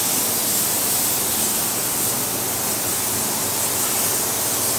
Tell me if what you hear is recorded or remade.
recorded